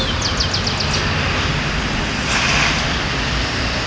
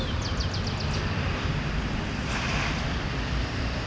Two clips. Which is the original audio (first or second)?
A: first